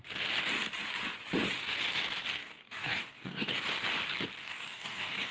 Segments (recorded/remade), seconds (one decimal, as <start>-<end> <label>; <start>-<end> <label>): 0.0-2.4 recorded; 2.4-3.6 remade; 3.6-4.4 recorded; 4.4-5.3 remade